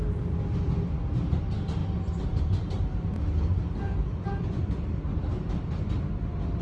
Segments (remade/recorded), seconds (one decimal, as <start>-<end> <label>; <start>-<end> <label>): 0.0-1.8 recorded; 1.8-2.4 remade; 2.4-3.9 recorded; 3.9-5.1 remade; 5.1-6.6 recorded